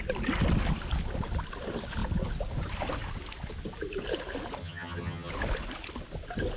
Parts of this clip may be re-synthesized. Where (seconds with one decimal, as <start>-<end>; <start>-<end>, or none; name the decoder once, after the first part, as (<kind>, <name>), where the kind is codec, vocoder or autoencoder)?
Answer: 4.6-5.3 (vocoder, HiFi-GAN)